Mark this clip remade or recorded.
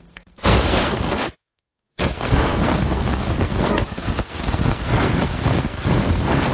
remade